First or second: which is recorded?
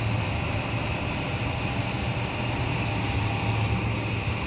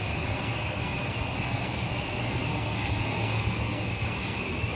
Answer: first